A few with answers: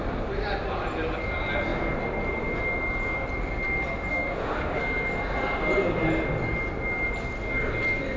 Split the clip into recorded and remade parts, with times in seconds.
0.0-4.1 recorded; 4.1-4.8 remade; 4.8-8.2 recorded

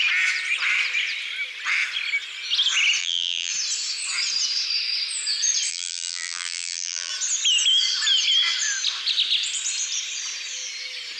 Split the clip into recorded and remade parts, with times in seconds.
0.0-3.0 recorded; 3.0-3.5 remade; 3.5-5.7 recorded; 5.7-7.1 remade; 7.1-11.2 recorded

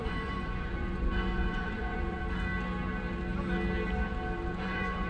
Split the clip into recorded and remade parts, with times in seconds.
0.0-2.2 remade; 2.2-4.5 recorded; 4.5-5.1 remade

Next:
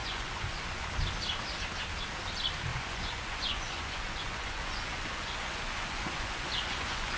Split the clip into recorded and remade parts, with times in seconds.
0.0-0.9 remade; 0.9-2.7 recorded; 2.7-7.2 remade

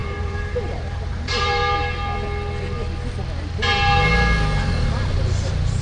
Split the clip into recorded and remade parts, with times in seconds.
0.0-1.6 remade; 1.6-5.1 recorded; 5.1-5.8 remade

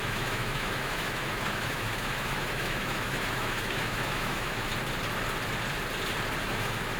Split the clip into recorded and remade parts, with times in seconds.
0.0-4.7 remade; 4.7-6.4 recorded; 6.4-7.0 remade

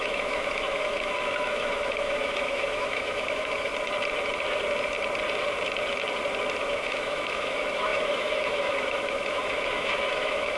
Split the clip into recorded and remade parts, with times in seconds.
0.0-3.7 remade; 3.7-6.6 recorded; 6.6-10.6 remade